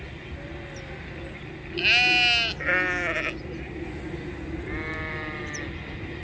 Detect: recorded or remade recorded